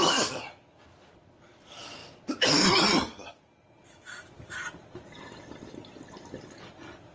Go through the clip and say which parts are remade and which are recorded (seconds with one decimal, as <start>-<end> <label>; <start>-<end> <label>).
0.0-7.1 recorded